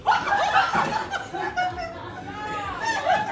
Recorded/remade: recorded